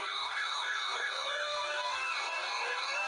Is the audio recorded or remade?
remade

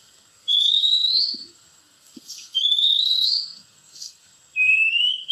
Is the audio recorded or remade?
remade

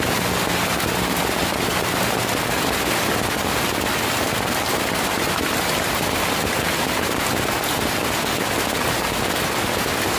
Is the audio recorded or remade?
recorded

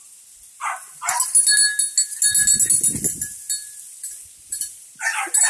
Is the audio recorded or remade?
recorded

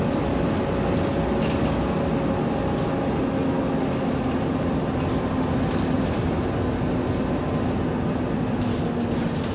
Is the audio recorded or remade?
recorded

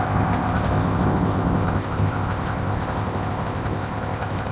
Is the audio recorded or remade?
remade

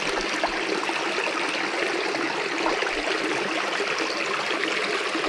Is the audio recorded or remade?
recorded